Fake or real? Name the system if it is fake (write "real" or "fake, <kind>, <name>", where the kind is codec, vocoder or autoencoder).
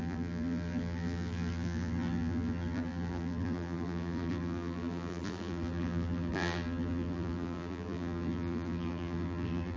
fake, vocoder, BigVGAN v2